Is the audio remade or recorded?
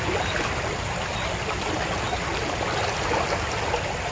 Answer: recorded